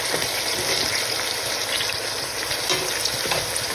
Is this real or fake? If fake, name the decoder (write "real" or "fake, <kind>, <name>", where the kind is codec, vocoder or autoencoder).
real